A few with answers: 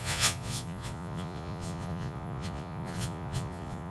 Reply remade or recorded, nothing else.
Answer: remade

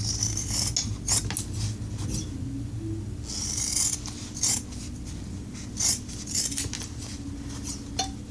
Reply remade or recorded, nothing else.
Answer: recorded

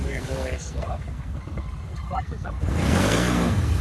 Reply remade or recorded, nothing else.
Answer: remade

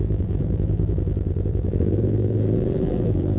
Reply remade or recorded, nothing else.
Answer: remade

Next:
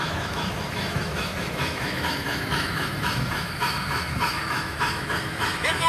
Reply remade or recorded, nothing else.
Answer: remade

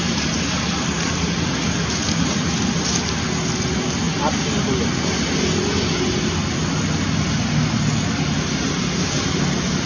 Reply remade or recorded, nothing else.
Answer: recorded